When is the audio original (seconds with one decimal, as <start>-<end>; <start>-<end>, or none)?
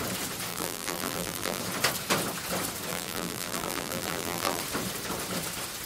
0.0-0.5; 1.6-2.9; 4.6-5.9